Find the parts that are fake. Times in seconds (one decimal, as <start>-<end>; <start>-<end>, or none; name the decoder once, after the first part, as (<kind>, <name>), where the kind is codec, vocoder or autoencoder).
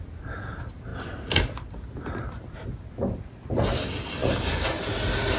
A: none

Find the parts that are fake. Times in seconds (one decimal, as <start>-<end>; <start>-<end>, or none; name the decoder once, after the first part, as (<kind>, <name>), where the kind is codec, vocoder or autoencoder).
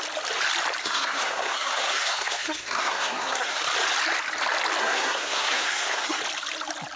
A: 0.8-3.6 (codec, SNAC); 4.8-6.2